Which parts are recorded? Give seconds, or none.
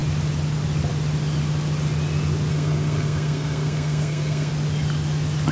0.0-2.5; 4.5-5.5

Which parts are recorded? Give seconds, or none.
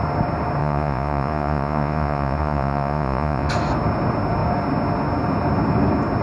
0.0-0.6; 3.5-6.2